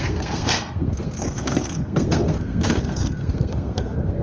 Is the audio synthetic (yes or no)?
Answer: yes